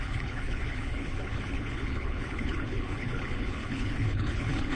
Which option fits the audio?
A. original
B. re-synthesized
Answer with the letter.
B